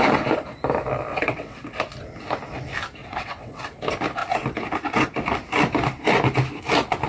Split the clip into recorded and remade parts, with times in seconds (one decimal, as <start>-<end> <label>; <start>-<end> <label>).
0.0-1.1 recorded; 1.1-1.6 remade; 1.6-3.0 recorded; 3.0-3.6 remade; 3.6-7.1 recorded